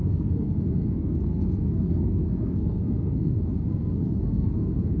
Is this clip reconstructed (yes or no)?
yes